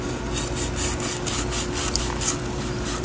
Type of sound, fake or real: real